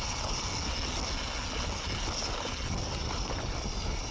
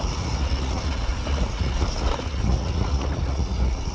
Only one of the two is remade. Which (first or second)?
second